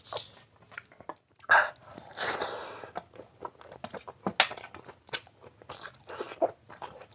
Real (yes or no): yes